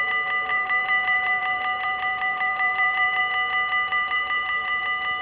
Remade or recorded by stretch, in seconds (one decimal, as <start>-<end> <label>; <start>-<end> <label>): 0.0-0.5 recorded; 0.5-3.2 remade; 3.2-3.9 recorded; 3.9-4.8 remade; 4.8-5.2 recorded